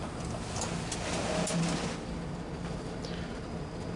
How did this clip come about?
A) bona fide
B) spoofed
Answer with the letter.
A